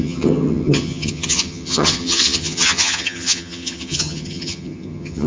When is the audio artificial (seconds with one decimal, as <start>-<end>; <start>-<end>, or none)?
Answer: 0.0-5.3